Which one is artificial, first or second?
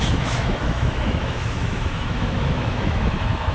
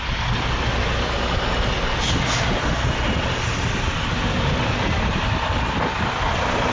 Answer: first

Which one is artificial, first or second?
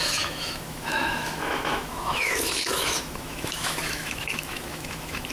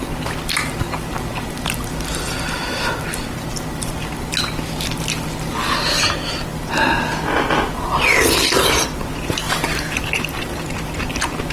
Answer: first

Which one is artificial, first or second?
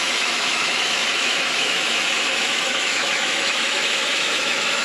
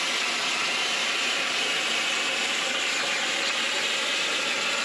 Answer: first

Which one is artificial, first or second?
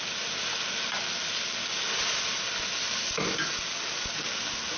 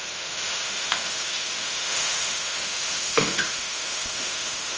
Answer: second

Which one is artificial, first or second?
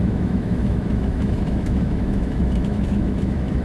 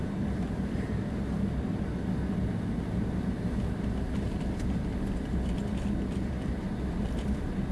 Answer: first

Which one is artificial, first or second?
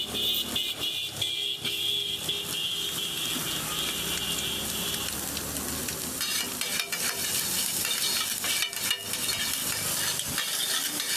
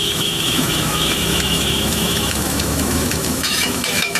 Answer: second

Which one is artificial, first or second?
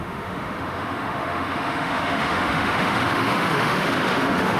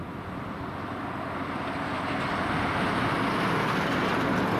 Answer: first